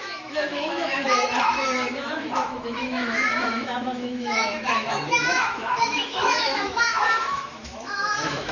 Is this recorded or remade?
remade